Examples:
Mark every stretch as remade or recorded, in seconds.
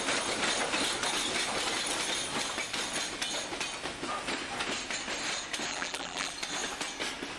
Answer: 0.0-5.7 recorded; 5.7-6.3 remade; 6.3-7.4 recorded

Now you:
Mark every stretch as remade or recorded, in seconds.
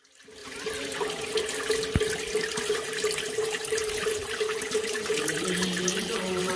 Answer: 0.0-0.4 recorded; 0.4-1.8 remade; 1.8-2.5 recorded; 2.5-6.6 remade